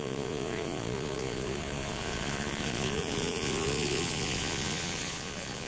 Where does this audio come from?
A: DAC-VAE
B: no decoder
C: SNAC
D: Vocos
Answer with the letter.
D